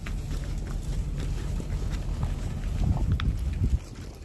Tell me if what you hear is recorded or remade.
recorded